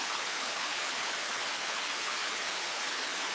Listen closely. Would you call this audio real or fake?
fake